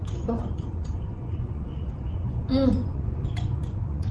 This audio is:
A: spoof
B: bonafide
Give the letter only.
A